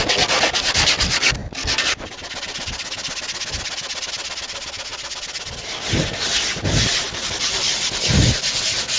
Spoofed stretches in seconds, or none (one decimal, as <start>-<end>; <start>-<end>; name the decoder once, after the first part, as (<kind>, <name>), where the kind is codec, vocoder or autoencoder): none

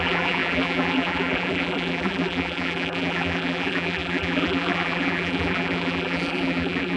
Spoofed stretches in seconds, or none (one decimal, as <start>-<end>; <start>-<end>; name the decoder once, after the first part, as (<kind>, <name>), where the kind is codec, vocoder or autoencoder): 0.0-7.0 (vocoder, BigVGAN v2)

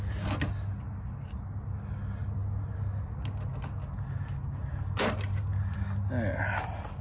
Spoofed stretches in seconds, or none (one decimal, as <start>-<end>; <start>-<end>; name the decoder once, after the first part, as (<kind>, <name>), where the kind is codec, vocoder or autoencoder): none